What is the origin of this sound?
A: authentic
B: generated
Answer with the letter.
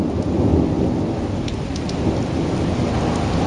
A